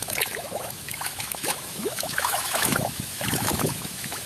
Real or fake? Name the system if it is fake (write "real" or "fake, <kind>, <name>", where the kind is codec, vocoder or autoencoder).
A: fake, autoencoder, DAC-VAE